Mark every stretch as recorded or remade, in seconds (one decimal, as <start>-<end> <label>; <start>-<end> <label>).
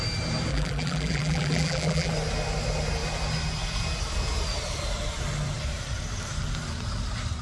0.0-0.5 recorded; 0.5-2.1 remade; 2.1-7.4 recorded